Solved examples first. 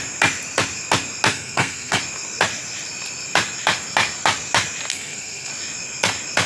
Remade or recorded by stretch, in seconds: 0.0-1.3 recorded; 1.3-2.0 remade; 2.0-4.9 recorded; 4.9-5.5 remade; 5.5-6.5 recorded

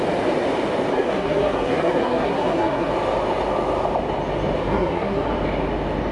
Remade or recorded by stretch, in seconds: 0.0-0.9 recorded; 0.9-2.9 remade; 2.9-4.6 recorded; 4.6-5.3 remade; 5.3-6.1 recorded

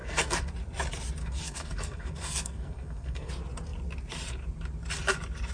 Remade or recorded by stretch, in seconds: 0.0-0.5 remade; 0.5-1.2 recorded; 1.2-3.3 remade; 3.3-5.5 recorded